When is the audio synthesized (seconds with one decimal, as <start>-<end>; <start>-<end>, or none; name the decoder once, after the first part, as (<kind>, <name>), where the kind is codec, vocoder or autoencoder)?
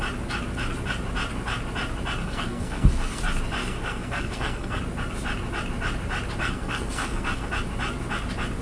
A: 2.2-3.2 (codec, SNAC); 3.6-4.8; 6.4-7.5